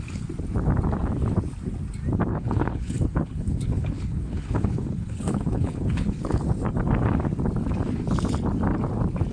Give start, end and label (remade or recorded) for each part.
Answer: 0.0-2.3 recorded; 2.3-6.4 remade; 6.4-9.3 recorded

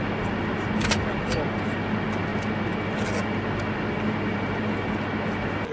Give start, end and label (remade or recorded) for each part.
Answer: 0.0-5.7 recorded

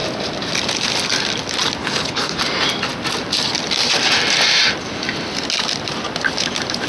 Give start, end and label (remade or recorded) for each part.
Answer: 0.0-1.8 recorded; 1.8-2.4 remade; 2.4-6.9 recorded